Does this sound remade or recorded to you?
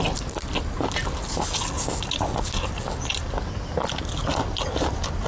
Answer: recorded